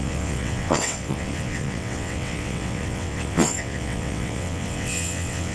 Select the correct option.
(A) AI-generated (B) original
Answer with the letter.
A